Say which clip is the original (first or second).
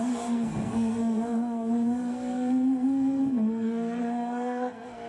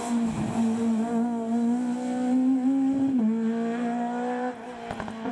second